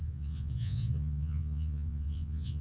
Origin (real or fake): fake